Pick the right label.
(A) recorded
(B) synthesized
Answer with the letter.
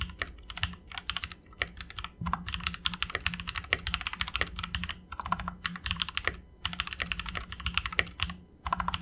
A